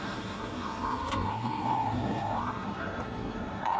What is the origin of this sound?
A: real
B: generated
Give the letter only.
B